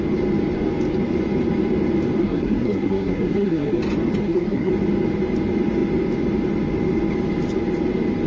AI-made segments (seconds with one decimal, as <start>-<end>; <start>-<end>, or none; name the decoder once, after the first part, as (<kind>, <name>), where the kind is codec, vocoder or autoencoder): 2.2-3.8 (codec, SNAC); 4.2-4.7